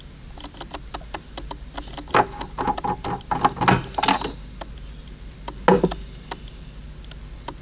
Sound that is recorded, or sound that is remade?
recorded